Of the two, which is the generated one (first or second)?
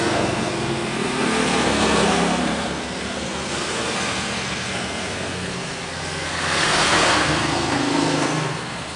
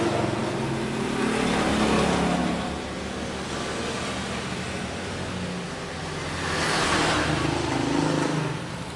first